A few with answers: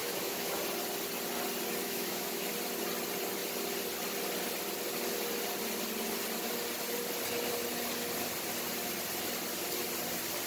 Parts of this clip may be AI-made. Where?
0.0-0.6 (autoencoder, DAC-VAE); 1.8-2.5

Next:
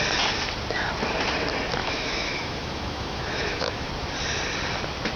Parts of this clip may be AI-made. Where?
1.8-3.9 (autoencoder, DAC-VAE)

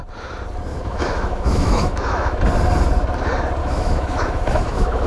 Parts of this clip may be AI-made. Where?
0.7-2.4 (autoencoder, DAC-VAE); 3.6-5.1

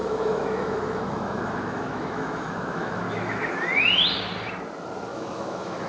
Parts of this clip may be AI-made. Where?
0.0-3.5 (autoencoder, DAC-VAE); 5.1-5.9

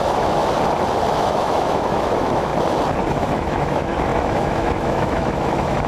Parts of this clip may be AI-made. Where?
0.0-0.4 (autoencoder, DAC-VAE); 1.1-2.5; 3.1-5.9

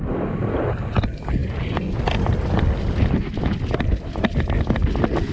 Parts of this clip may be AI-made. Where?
none

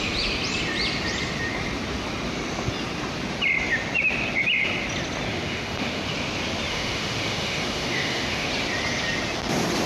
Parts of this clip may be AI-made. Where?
5.3-6.0 (autoencoder, DAC-VAE); 6.7-8.5